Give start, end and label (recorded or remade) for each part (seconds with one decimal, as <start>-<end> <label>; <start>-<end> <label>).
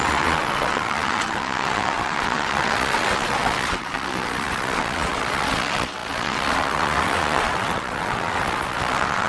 0.0-9.3 remade